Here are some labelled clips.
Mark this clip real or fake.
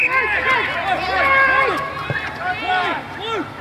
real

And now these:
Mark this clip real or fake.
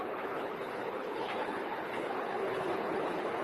fake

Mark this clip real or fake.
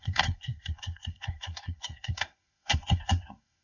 fake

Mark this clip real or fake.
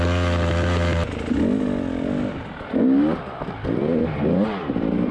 real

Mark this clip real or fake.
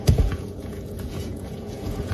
fake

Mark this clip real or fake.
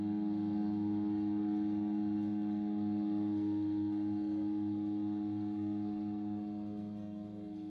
fake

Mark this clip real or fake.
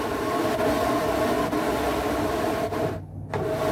real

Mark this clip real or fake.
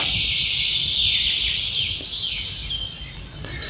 real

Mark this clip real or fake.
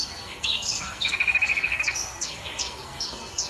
fake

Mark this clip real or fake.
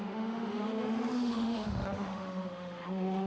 fake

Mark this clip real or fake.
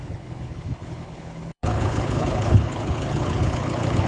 fake